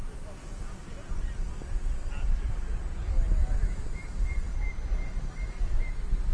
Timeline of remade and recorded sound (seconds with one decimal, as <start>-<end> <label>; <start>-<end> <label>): 0.0-6.3 recorded